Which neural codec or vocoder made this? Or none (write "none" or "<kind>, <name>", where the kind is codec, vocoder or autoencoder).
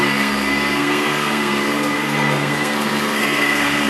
codec, SNAC